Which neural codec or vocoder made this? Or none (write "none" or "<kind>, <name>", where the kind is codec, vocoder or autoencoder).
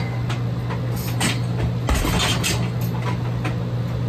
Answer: none